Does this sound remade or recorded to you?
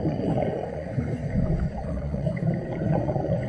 remade